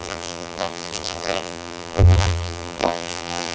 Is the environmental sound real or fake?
fake